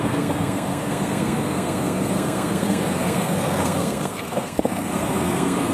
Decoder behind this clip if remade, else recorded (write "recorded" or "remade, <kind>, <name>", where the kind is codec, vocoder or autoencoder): remade, codec, SNAC